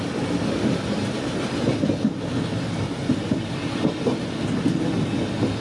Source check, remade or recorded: recorded